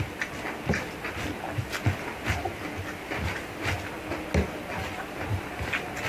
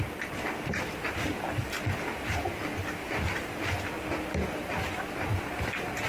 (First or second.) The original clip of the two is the first